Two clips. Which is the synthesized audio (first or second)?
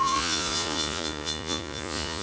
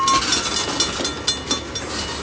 first